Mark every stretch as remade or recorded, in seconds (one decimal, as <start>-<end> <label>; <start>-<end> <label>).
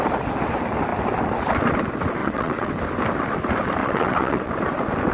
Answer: 0.0-2.2 recorded; 2.2-2.7 remade; 2.7-3.8 recorded; 3.8-4.5 remade; 4.5-5.1 recorded